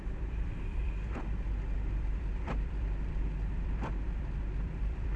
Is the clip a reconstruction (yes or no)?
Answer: yes